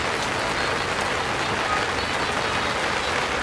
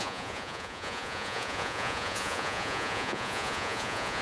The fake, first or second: second